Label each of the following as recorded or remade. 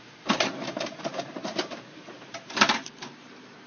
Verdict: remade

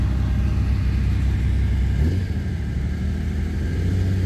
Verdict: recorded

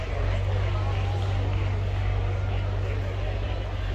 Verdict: recorded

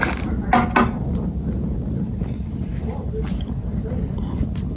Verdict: recorded